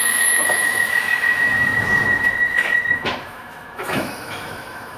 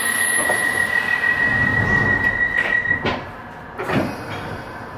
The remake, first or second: first